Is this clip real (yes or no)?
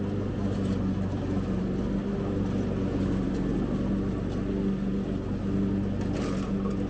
yes